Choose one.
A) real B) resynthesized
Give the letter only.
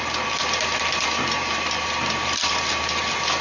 A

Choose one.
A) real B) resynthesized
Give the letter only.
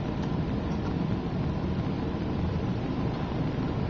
B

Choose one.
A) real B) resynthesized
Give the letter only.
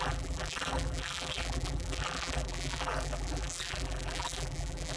B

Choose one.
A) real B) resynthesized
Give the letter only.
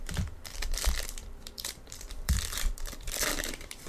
B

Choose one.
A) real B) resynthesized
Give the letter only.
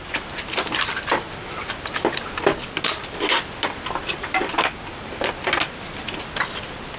A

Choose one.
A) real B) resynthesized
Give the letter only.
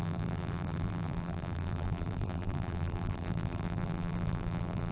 B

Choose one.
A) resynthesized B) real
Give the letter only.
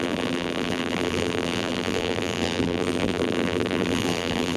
A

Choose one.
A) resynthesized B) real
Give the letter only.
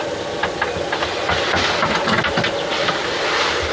B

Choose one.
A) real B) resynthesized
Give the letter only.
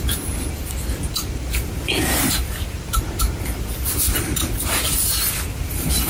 B